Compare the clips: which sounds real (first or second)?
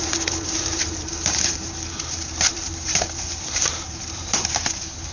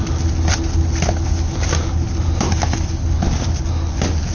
second